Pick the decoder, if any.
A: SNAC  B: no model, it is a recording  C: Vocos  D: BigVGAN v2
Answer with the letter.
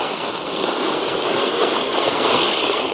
A